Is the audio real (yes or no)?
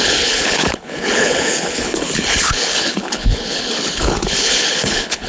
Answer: no